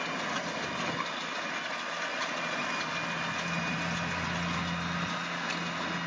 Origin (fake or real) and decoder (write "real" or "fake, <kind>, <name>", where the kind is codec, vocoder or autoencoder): real